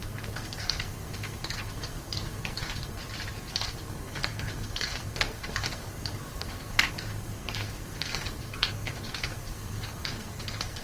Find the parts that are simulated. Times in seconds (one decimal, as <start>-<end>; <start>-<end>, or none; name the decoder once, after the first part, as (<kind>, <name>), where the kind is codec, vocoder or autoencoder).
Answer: 0.0-3.0 (codec, SNAC); 3.5-10.8